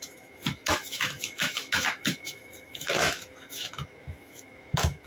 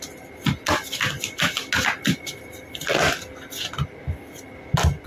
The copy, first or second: first